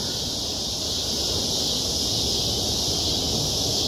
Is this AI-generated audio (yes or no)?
no